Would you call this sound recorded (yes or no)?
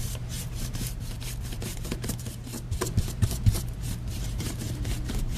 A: no